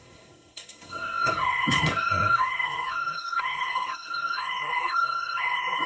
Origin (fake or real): fake